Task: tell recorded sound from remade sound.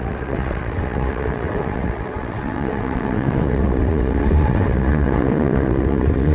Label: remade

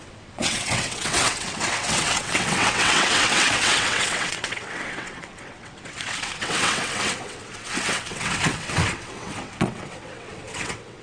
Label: remade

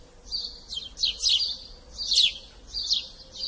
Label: recorded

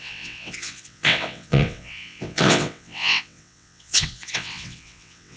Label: remade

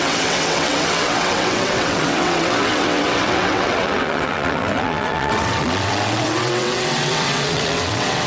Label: remade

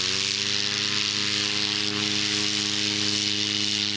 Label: recorded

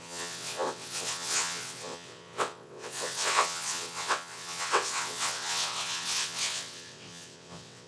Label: remade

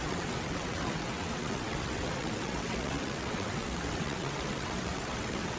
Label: remade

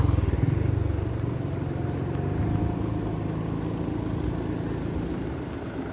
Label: recorded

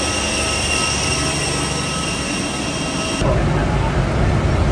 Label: recorded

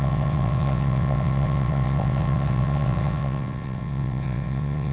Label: remade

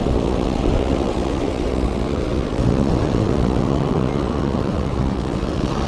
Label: remade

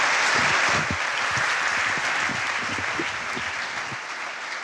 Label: recorded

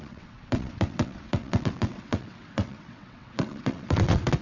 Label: remade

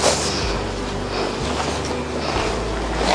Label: recorded